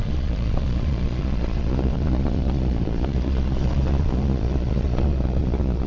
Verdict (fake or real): fake